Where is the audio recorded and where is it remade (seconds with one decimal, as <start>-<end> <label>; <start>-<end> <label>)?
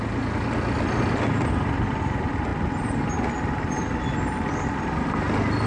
0.0-5.7 recorded